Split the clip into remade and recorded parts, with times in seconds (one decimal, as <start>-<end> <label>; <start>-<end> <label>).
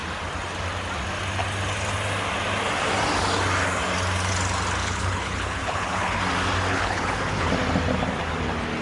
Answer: 0.0-4.8 recorded; 4.8-6.2 remade; 6.2-6.7 recorded; 6.7-7.5 remade; 7.5-8.8 recorded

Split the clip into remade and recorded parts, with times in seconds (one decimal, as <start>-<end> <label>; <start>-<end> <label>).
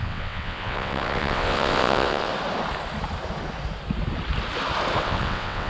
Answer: 0.0-2.3 remade; 2.3-5.0 recorded; 5.0-5.7 remade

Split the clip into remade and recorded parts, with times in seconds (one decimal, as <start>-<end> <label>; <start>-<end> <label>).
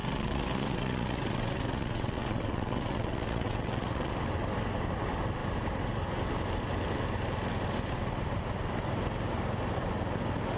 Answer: 0.0-4.1 remade; 4.1-10.6 recorded